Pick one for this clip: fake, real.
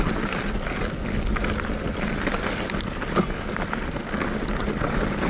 real